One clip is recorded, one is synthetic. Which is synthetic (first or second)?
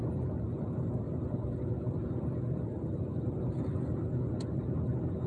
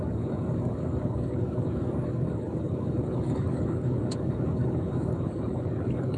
second